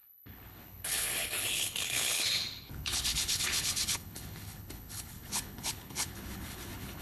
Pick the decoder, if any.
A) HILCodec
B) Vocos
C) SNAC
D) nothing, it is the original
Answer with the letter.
A